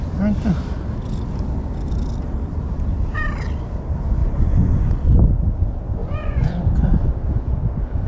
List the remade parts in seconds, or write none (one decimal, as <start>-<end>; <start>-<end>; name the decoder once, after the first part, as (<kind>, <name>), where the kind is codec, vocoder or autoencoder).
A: 4.2-4.8 (vocoder, Vocos); 6.0-7.1